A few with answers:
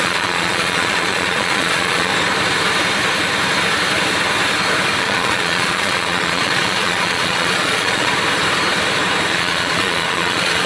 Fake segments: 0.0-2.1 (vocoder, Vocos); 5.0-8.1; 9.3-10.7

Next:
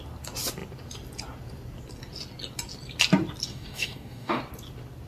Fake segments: 3.5-4.4 (codec, DAC)